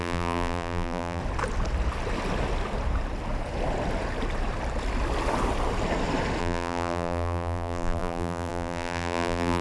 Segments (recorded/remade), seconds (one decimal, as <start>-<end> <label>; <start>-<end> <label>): 0.0-1.2 remade; 1.2-6.4 recorded; 6.4-9.6 remade